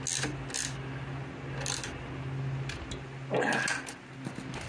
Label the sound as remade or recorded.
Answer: recorded